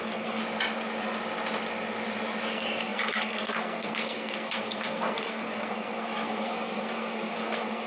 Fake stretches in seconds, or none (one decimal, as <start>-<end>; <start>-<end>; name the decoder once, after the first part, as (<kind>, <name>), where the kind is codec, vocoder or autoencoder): 0.0-0.4 (codec, SNAC); 2.5-7.9